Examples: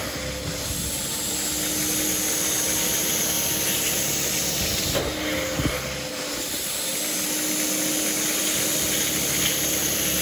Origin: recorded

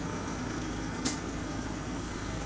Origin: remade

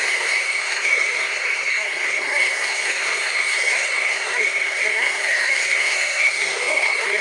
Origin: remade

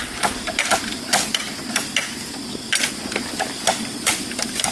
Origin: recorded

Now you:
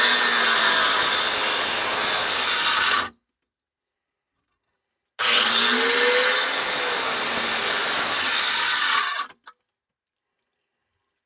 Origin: recorded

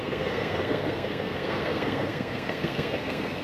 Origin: remade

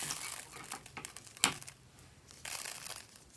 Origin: recorded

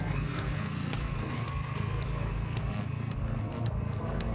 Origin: remade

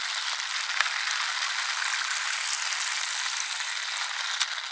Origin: recorded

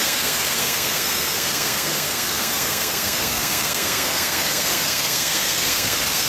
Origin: remade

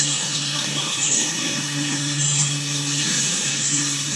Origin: remade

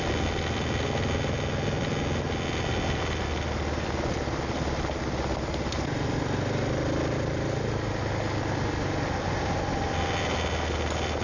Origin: recorded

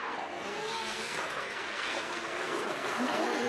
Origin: remade